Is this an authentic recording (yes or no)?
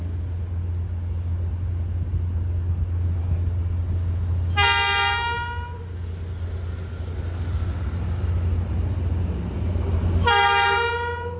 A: yes